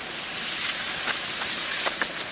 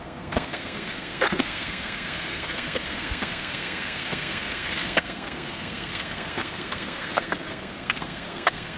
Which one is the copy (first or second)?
second